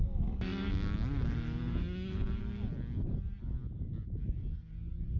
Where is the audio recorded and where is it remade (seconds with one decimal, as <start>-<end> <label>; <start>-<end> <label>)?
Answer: 0.0-5.2 recorded